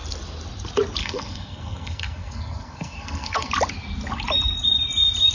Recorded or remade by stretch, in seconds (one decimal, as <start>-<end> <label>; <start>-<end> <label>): 0.0-1.0 recorded; 1.0-3.5 remade; 3.5-5.3 recorded